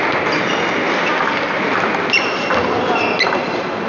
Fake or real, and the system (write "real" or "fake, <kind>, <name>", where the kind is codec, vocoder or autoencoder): real